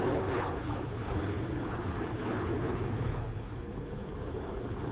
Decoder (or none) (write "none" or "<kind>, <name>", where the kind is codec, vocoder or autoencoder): codec, HILCodec